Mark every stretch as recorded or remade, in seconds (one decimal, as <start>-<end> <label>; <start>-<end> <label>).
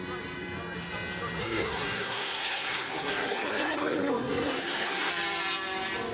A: 0.0-1.4 recorded; 1.4-5.1 remade; 5.1-6.1 recorded